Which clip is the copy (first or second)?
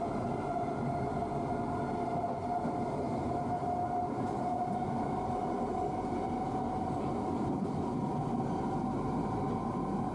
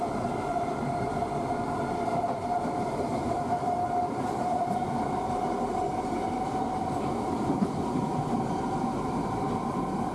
second